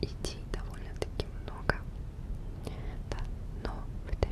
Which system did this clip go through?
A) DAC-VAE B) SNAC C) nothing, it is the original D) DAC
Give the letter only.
C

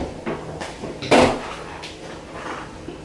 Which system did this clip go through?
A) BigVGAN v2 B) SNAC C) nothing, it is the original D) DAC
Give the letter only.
C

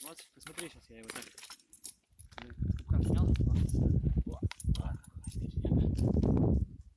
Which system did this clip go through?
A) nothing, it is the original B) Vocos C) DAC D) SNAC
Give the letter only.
A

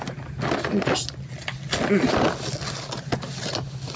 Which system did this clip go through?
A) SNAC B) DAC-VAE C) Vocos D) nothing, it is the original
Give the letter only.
D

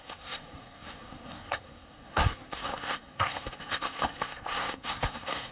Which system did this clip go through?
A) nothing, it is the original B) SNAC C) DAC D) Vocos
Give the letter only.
B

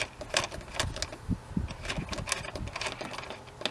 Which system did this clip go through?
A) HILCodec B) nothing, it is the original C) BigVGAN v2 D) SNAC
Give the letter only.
B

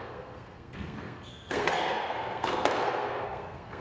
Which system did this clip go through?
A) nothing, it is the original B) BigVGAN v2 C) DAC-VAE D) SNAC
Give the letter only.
D